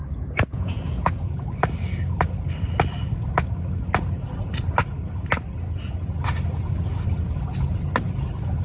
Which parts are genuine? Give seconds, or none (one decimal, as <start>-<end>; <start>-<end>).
1.3-8.6